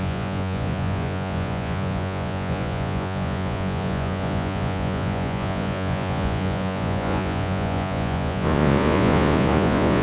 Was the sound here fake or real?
fake